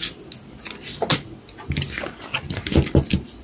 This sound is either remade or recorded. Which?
recorded